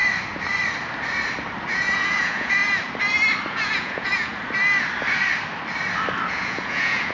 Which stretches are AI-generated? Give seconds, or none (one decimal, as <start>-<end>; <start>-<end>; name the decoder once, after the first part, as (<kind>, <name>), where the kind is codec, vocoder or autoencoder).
1.7-2.6 (vocoder, Vocos); 3.5-4.3; 6.3-7.1